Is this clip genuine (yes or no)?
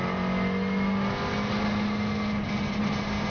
yes